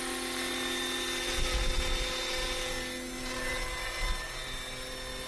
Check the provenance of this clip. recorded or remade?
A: recorded